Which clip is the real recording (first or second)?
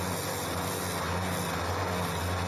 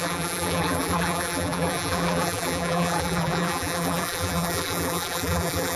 first